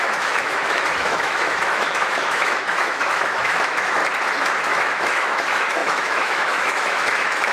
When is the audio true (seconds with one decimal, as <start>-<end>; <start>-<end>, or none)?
4.0-4.6